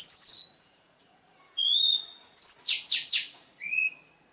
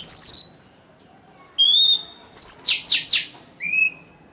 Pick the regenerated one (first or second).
first